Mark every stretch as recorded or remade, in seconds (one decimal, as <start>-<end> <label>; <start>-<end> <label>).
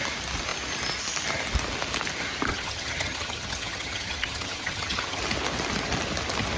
0.0-2.5 recorded; 2.5-5.2 remade; 5.2-6.6 recorded